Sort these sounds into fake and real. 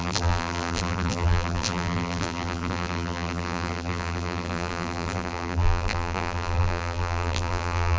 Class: fake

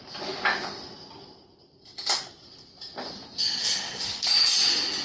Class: real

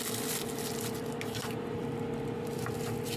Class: fake